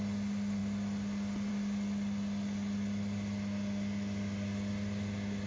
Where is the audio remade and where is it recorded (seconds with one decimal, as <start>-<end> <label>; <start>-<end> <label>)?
0.0-5.5 recorded